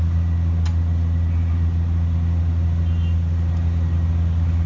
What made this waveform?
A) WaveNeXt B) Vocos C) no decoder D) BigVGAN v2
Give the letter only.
C